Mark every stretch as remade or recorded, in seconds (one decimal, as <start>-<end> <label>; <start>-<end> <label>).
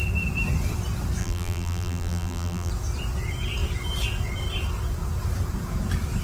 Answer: 0.0-1.2 recorded; 1.2-2.7 remade; 2.7-6.2 recorded